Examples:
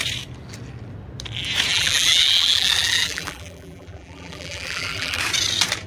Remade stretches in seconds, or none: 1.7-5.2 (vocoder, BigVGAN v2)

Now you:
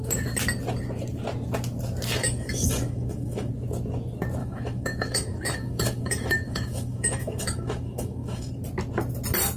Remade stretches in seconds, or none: 2.2-3.5 (autoencoder, DAC-VAE); 4.4-8.5

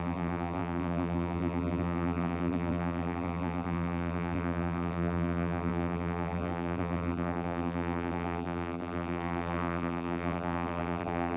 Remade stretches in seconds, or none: 0.0-11.4 (vocoder, BigVGAN v2)